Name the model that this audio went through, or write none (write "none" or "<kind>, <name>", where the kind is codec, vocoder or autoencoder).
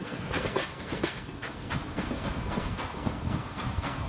codec, SNAC